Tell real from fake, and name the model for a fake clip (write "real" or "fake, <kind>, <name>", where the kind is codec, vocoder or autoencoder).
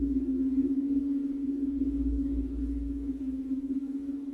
fake, codec, DAC